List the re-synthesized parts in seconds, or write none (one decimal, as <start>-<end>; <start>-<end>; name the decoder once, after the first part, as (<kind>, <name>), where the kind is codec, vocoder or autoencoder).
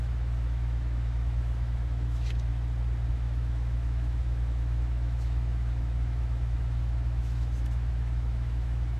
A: 0.0-2.5 (autoencoder, DAC-VAE); 3.1-9.0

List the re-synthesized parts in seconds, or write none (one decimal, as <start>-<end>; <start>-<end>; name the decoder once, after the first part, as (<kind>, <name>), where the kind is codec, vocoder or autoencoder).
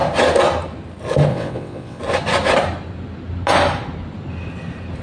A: 1.3-2.0 (vocoder, WaveNeXt)